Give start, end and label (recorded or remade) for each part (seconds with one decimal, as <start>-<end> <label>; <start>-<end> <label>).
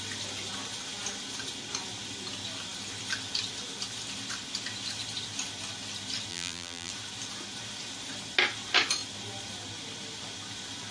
0.0-6.3 recorded; 6.3-6.9 remade; 6.9-10.9 recorded